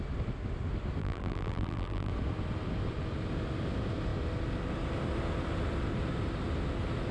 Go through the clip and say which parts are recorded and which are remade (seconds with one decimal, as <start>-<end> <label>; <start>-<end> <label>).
0.0-1.0 recorded; 1.0-2.1 remade; 2.1-7.1 recorded